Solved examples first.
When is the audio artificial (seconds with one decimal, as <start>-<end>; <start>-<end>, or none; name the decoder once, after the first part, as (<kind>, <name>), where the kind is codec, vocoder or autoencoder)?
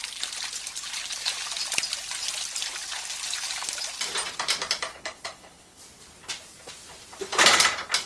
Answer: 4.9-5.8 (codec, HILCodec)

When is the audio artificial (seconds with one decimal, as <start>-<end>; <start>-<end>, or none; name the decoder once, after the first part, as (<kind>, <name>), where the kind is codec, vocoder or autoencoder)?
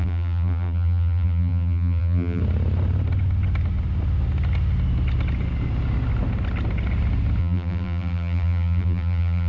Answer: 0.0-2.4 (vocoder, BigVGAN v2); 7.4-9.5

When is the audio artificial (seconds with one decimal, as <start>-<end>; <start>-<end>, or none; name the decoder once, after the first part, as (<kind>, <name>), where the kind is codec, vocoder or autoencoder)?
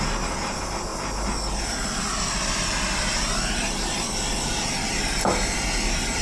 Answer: none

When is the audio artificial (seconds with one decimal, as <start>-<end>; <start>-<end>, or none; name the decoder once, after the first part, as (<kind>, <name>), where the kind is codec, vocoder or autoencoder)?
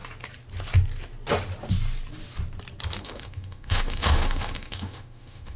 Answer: 3.0-5.6 (autoencoder, DAC-VAE)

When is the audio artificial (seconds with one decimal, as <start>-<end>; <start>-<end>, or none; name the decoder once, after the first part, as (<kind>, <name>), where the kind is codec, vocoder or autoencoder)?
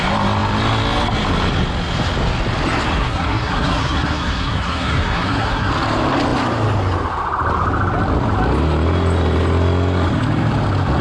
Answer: 3.0-5.7 (codec, SNAC)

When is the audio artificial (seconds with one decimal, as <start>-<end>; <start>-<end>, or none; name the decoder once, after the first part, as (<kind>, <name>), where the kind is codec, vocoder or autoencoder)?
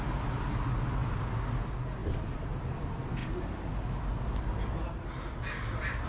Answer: none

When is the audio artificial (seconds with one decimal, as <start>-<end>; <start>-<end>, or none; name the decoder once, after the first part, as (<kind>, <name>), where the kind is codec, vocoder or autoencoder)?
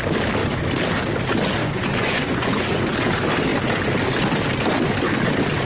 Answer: 1.6-2.8 (vocoder, Vocos)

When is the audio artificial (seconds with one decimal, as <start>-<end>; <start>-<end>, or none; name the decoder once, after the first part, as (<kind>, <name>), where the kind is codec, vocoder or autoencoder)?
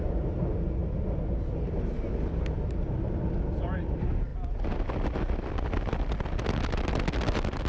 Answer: none